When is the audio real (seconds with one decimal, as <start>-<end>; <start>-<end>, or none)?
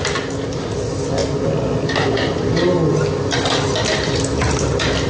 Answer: 0.0-5.1